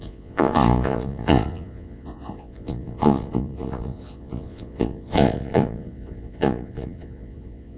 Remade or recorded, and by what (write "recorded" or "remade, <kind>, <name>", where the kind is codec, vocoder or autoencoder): remade, vocoder, Vocos